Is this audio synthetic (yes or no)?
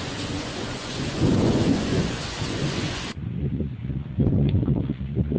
yes